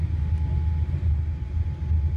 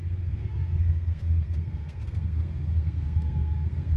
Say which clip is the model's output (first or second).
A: second